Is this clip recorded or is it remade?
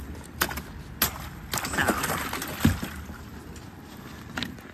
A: recorded